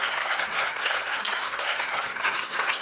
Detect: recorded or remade remade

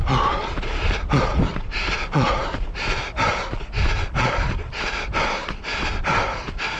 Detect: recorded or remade recorded